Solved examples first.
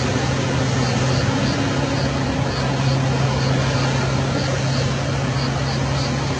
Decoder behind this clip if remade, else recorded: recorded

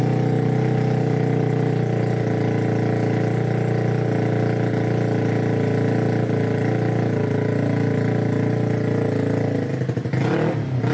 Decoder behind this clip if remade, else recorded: recorded